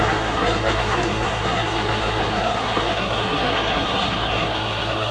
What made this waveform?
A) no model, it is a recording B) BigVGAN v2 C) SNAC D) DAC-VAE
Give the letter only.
C